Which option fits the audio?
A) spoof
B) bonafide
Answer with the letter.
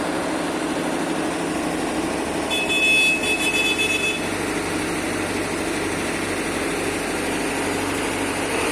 B